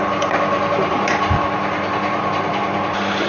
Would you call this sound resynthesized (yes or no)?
no